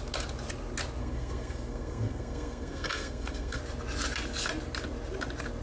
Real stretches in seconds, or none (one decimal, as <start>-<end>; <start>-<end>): 0.0-1.0; 3.6-5.6